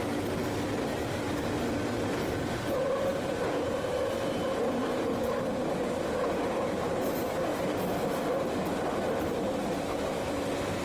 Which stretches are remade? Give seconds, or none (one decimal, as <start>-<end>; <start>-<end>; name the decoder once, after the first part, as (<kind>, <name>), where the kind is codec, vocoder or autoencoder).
none